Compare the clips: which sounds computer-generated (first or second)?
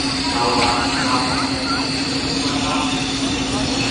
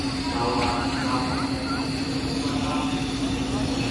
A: first